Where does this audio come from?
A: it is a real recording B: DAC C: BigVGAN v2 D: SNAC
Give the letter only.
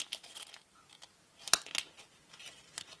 A